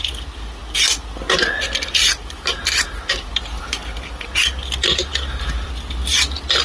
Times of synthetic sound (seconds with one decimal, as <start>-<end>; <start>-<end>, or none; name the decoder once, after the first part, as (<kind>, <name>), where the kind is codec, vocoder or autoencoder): 5.1-5.7 (vocoder, BigVGAN v2)